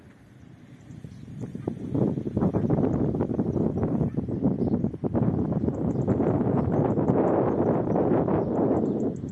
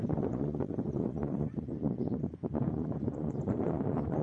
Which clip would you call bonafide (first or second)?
first